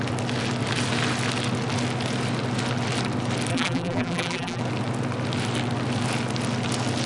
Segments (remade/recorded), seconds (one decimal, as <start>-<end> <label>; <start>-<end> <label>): 0.0-3.5 recorded; 3.5-4.6 remade; 4.6-7.1 recorded